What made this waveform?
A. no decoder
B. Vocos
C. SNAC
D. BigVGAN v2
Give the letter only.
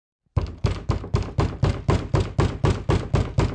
A